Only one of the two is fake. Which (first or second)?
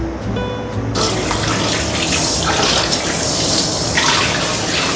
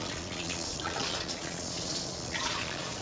second